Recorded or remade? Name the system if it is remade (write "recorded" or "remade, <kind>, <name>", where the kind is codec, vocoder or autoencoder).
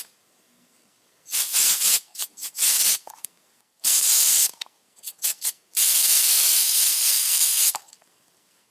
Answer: remade, codec, SNAC